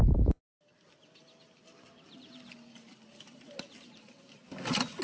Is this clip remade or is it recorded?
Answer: recorded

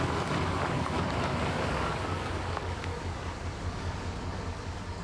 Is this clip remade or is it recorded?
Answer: remade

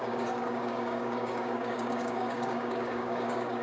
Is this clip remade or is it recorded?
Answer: remade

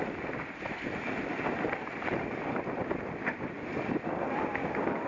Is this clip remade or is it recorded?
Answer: recorded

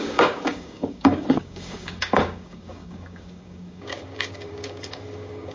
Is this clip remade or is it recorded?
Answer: remade